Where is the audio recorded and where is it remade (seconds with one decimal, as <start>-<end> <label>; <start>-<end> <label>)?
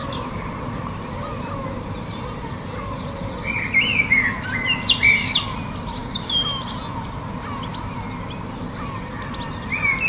0.0-3.3 remade; 3.3-10.1 recorded